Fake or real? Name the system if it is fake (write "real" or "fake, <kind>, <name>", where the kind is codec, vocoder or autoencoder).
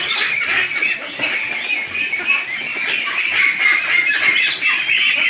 real